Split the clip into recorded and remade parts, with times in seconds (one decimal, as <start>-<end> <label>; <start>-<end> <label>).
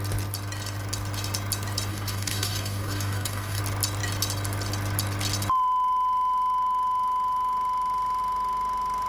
0.0-1.9 recorded; 1.9-3.6 remade; 3.6-9.1 recorded